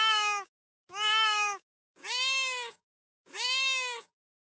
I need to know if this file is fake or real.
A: fake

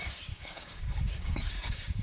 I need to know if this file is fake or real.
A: fake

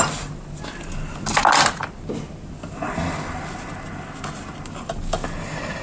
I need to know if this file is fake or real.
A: real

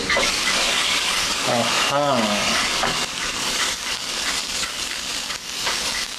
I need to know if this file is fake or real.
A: fake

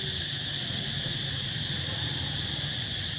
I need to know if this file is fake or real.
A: real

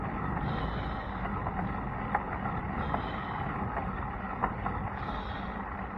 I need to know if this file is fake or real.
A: real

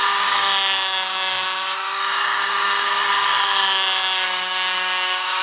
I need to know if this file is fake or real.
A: fake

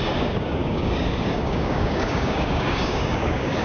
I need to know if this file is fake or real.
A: fake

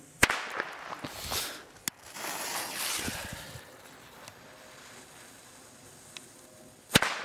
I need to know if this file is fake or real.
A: real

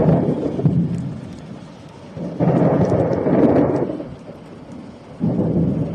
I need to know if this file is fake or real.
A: real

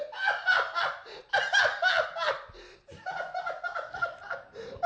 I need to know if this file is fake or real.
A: real